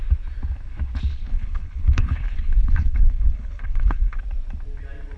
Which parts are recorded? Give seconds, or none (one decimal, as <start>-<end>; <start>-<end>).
0.0-1.1; 4.2-5.2